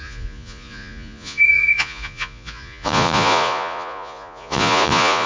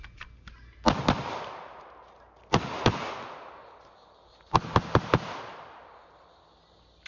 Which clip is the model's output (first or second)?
first